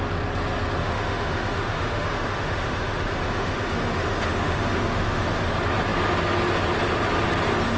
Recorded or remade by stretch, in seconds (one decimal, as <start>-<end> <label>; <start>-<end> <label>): 0.0-0.8 recorded; 0.8-5.5 remade; 5.5-7.8 recorded